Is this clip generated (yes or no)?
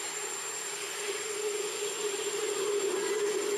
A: no